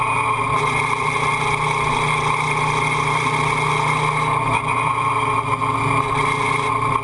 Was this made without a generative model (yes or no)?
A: yes